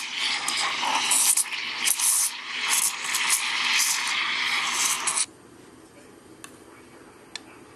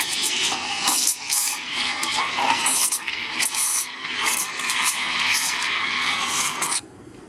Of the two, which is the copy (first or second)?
second